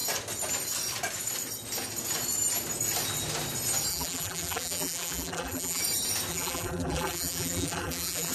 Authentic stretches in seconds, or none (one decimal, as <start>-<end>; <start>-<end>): 0.0-3.9; 5.8-6.3

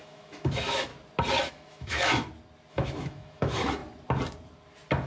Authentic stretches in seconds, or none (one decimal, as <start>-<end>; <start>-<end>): 0.9-1.5; 2.2-2.7; 3.8-5.1

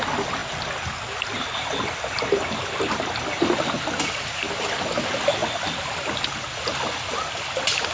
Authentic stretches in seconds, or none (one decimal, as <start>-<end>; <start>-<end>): 0.0-7.9